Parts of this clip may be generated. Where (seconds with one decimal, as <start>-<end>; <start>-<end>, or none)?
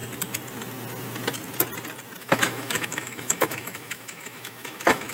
2.2-5.1